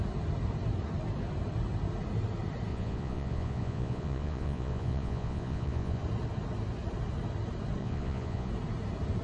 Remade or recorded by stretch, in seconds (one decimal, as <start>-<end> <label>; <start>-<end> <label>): 0.0-2.7 recorded; 2.7-6.0 remade; 6.0-7.8 recorded; 7.8-8.5 remade; 8.5-9.2 recorded